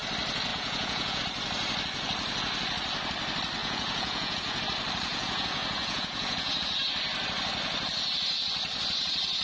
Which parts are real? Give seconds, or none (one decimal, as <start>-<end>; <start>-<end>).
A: 0.0-0.5; 1.2-3.6; 4.6-5.1; 6.5-9.4